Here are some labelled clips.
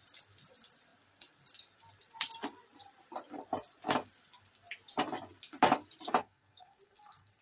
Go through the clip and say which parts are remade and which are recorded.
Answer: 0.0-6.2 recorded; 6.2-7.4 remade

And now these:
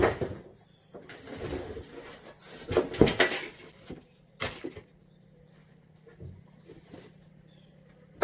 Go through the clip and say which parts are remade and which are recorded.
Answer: 0.0-8.2 recorded

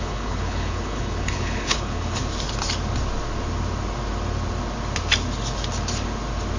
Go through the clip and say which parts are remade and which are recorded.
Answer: 0.0-2.2 remade; 2.2-6.6 recorded